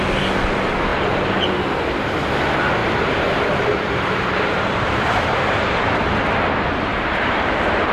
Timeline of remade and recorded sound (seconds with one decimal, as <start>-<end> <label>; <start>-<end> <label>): 0.0-2.8 recorded; 2.8-5.6 remade; 5.6-6.9 recorded; 6.9-7.9 remade